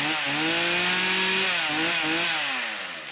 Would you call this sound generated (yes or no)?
no